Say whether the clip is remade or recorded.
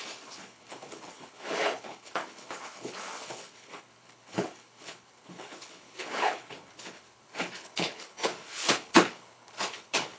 remade